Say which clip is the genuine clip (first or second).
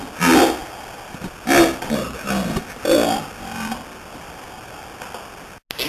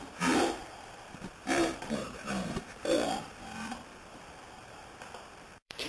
first